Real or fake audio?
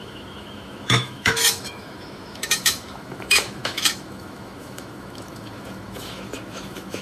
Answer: fake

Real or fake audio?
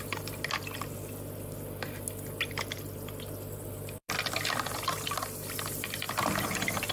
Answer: real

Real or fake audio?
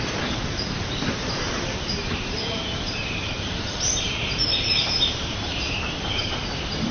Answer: fake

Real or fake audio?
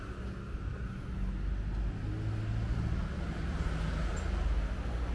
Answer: real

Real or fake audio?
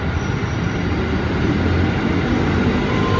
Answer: real